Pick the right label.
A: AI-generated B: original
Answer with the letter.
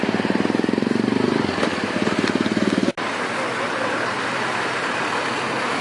B